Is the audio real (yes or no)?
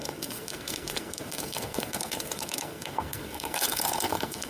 no